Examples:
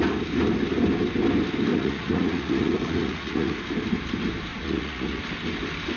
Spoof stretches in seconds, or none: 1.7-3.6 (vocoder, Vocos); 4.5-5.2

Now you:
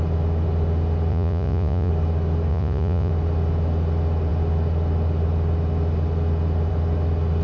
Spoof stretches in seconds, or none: 1.1-1.9 (vocoder, Vocos); 2.5-3.1

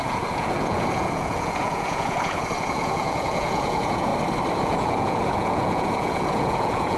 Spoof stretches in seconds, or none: 0.0-4.1 (vocoder, Vocos); 4.6-7.0

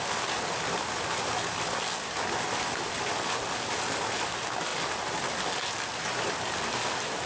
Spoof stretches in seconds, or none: none

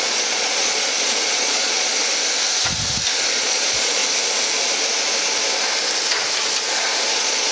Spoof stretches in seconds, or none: 0.0-1.9 (vocoder, Vocos); 3.3-4.0; 7.1-7.5

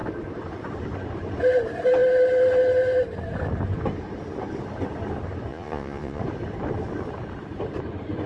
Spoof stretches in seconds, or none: 5.5-6.2 (vocoder, Vocos)